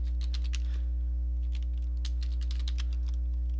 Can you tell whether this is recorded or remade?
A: recorded